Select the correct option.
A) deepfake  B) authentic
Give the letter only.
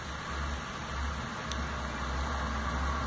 B